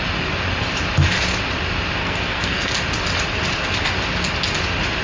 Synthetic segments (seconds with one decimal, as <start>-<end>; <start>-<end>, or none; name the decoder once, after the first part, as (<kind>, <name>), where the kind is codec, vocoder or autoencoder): 2.0-2.7 (codec, SNAC)